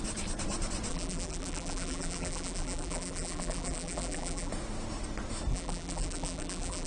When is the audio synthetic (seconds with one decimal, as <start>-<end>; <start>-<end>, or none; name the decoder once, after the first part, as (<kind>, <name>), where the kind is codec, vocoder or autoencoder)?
0.9-4.5 (vocoder, BigVGAN v2); 5.5-6.9